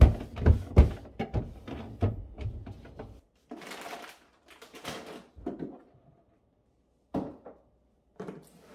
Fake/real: real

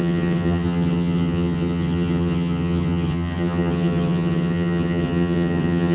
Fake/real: fake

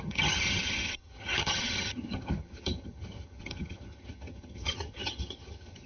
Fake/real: fake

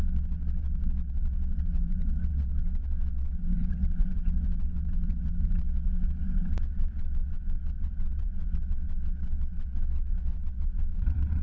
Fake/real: fake